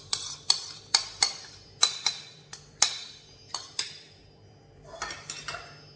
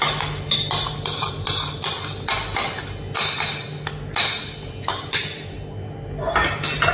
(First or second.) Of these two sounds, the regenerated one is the first